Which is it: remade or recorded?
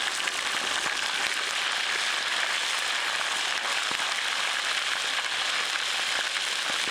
recorded